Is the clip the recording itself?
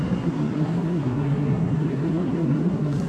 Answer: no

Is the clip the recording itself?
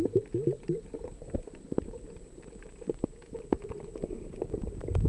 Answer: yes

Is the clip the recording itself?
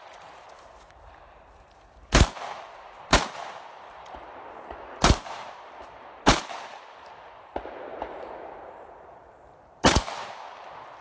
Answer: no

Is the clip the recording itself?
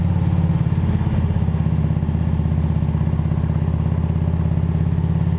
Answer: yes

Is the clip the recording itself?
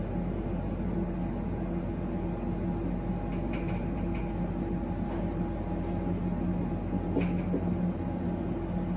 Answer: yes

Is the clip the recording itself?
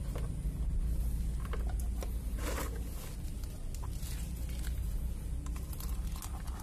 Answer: yes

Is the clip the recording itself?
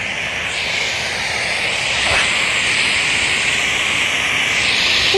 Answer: yes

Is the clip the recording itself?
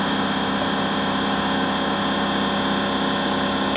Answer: yes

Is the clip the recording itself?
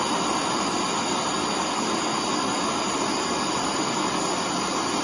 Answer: yes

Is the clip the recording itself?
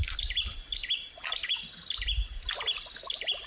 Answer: yes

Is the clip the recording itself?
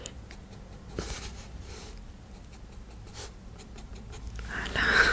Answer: yes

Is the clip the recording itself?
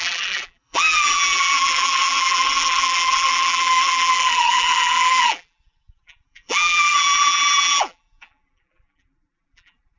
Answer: no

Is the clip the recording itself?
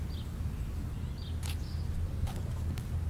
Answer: yes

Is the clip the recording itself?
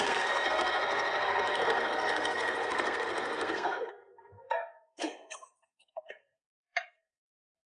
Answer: no